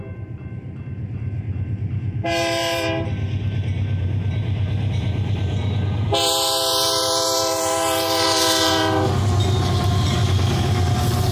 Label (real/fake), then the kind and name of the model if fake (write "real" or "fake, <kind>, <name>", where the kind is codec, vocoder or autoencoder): fake, vocoder, BigVGAN v2